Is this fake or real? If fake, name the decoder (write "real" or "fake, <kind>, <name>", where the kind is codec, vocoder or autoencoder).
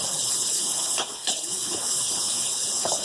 fake, codec, HILCodec